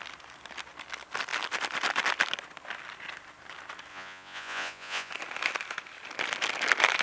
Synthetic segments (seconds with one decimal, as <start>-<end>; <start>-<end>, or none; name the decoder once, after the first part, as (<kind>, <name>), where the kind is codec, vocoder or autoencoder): 3.9-5.1 (vocoder, Vocos)